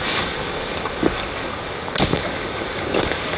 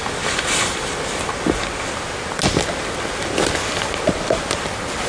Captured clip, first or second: second